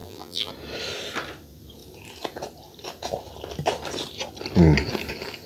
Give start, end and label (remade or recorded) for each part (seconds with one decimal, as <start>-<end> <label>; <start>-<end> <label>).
0.0-0.5 remade; 0.5-5.5 recorded